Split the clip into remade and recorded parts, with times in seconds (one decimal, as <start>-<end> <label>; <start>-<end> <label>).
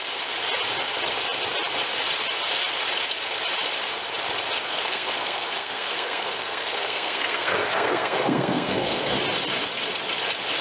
0.0-4.6 recorded; 4.6-9.2 remade; 9.2-10.6 recorded